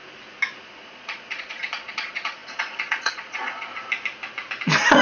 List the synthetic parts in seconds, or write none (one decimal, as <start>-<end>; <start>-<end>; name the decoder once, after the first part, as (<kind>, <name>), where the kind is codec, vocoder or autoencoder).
0.6-3.7 (vocoder, Vocos)